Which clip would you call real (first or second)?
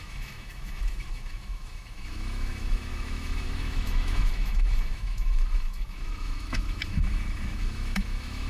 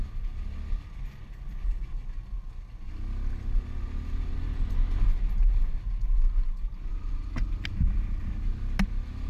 second